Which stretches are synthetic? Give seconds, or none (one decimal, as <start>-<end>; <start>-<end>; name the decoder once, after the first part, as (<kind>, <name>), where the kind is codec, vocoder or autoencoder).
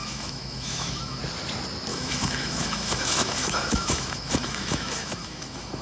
0.0-1.2 (autoencoder, DAC-VAE); 1.9-5.8